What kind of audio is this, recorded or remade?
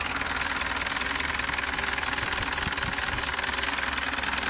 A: recorded